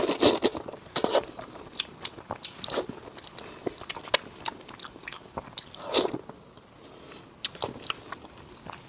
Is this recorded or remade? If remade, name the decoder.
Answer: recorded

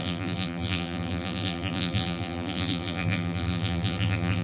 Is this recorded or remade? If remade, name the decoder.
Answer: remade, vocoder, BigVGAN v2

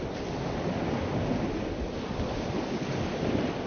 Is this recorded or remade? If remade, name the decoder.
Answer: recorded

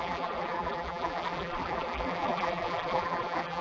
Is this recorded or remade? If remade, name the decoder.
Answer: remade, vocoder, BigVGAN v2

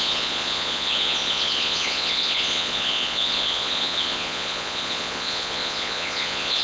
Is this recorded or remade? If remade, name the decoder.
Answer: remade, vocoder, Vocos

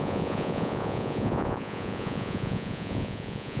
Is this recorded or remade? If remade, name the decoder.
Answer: remade, vocoder, Vocos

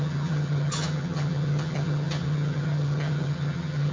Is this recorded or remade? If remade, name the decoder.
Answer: remade, vocoder, HiFi-GAN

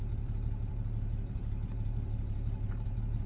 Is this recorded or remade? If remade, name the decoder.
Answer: remade, vocoder, BigVGAN v2